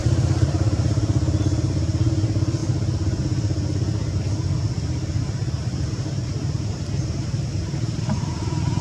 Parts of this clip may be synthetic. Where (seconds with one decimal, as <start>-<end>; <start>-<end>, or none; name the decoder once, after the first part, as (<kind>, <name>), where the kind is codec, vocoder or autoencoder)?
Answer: 0.0-2.6 (vocoder, BigVGAN v2); 6.3-8.8